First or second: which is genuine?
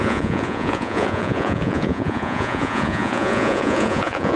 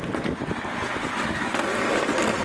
second